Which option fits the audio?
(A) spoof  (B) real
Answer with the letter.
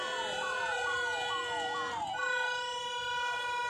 B